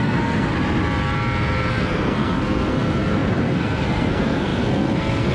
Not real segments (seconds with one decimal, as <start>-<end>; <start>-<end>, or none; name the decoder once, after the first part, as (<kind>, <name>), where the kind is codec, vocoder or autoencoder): 0.0-0.5 (codec, SNAC); 1.7-5.3